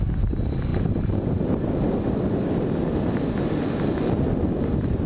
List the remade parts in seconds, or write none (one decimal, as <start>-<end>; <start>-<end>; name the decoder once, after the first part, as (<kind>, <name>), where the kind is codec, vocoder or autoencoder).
none